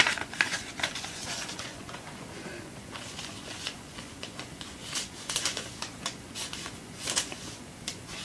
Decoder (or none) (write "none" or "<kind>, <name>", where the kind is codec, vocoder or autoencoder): vocoder, Vocos